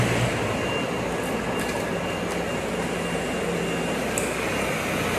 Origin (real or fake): real